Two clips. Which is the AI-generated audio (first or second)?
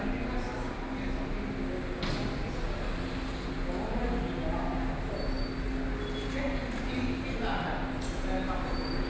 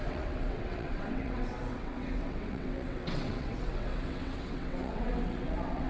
second